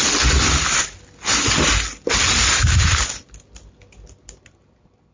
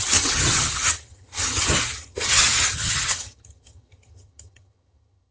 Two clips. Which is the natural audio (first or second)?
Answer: first